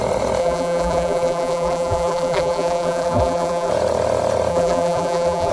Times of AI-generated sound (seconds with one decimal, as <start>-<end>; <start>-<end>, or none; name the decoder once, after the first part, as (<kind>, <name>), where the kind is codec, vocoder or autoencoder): 0.4-3.7 (vocoder, BigVGAN v2); 4.5-5.5